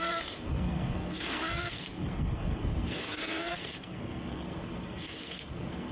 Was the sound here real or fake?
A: fake